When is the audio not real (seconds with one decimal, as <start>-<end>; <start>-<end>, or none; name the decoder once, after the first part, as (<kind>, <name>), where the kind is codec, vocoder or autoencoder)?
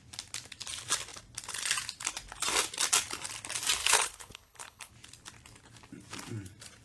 3.8-4.9 (codec, HILCodec)